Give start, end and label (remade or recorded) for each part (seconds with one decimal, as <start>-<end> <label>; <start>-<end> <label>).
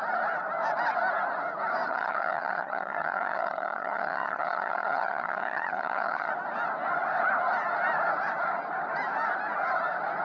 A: 0.0-1.9 recorded; 1.9-6.3 remade; 6.3-10.2 recorded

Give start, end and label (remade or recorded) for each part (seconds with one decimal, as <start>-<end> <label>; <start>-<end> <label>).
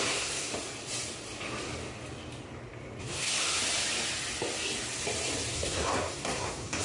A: 0.0-0.5 remade; 0.5-3.0 recorded; 3.0-3.6 remade; 3.6-5.5 recorded; 5.5-6.8 remade